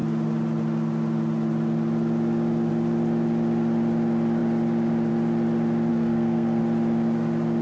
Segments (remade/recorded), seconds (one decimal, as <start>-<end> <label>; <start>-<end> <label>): 0.0-5.9 recorded; 5.9-6.6 remade; 6.6-7.6 recorded